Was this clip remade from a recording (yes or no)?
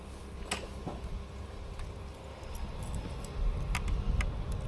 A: no